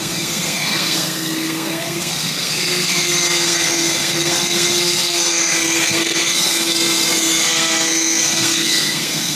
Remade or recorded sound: remade